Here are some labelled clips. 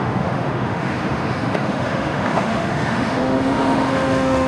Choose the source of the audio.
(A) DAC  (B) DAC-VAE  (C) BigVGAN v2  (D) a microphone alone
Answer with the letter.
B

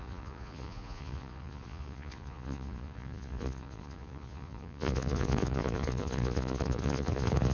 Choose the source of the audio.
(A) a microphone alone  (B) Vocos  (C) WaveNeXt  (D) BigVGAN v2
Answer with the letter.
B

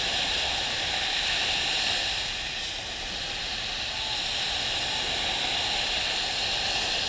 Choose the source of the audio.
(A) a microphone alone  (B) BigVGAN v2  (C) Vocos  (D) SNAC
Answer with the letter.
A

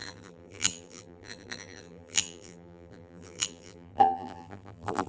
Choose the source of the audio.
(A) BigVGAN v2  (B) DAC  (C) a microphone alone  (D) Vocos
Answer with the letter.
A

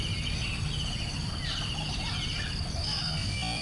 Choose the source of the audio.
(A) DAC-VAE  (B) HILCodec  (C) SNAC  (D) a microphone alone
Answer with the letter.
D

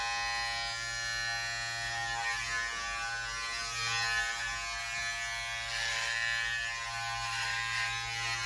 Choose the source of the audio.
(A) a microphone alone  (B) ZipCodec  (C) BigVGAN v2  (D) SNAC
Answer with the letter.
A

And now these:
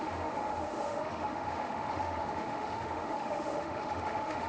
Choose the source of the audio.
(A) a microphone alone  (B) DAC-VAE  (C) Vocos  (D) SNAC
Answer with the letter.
B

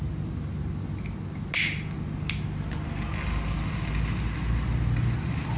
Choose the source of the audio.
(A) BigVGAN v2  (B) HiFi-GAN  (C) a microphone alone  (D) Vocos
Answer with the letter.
C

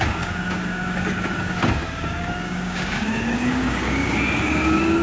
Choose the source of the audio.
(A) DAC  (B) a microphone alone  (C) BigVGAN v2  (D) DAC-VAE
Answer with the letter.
A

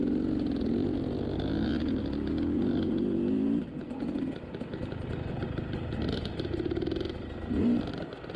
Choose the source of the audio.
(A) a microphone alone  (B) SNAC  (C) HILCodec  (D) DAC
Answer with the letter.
A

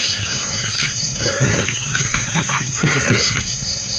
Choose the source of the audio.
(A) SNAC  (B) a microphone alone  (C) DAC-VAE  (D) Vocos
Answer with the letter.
A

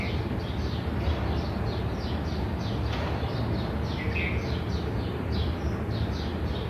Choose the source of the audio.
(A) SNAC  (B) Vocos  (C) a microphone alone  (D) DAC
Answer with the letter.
C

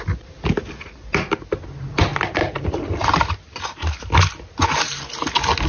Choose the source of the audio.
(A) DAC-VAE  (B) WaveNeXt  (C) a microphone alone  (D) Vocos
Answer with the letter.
C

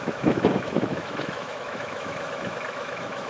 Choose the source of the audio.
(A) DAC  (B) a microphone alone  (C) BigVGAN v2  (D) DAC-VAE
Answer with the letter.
D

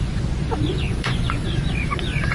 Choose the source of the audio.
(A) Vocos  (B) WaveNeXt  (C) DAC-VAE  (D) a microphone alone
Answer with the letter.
A